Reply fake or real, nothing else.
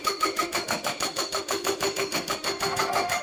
fake